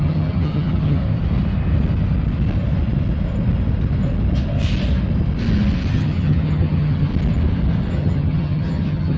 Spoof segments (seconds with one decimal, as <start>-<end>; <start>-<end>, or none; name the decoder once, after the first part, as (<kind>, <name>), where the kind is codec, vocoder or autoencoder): 0.0-1.0 (vocoder, HiFi-GAN); 5.9-7.1; 7.9-9.2